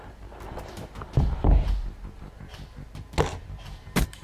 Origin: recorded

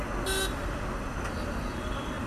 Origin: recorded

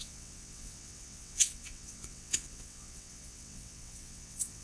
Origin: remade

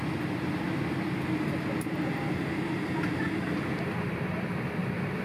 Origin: recorded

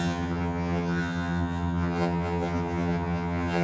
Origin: remade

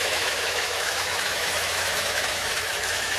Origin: remade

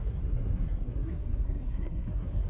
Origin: remade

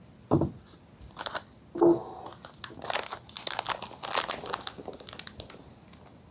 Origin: recorded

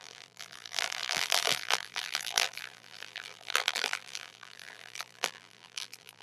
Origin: remade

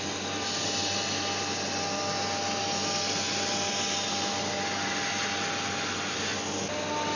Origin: recorded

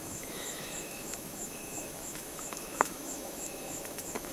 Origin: remade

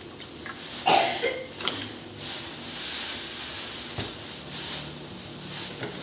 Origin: recorded